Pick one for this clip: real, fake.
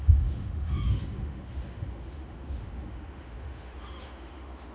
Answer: fake